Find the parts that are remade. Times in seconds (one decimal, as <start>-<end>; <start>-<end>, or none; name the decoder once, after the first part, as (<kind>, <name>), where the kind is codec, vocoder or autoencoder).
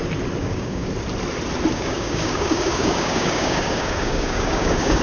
0.4-0.9 (codec, DAC); 1.7-5.0